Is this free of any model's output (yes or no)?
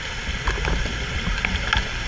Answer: yes